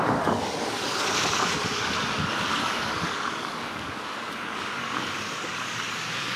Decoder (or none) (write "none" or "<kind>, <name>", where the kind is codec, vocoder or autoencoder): codec, DAC